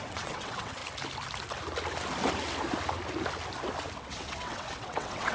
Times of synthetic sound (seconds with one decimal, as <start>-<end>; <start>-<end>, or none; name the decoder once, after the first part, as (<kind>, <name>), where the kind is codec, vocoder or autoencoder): 0.0-0.8 (vocoder, WaveNeXt); 4.0-5.3